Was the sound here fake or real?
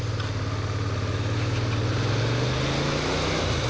real